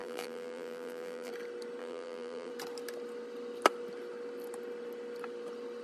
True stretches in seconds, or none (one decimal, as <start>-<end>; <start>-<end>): 1.3-1.8; 2.5-5.8